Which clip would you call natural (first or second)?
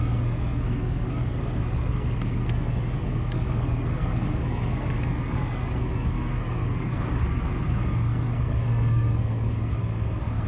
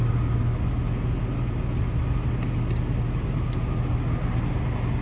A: second